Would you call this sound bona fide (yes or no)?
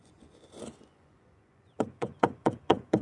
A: no